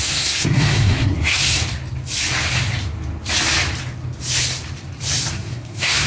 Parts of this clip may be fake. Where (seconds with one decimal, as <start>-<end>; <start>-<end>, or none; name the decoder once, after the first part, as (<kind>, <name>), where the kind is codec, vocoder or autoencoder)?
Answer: 0.0-1.6 (codec, SNAC); 5.3-6.1